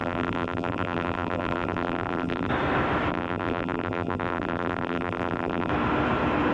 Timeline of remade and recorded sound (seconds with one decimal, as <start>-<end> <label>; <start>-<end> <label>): 0.0-2.5 remade; 2.5-3.1 recorded; 3.1-5.7 remade; 5.7-6.5 recorded